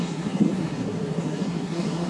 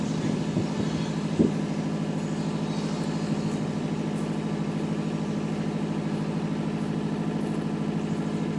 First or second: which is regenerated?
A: first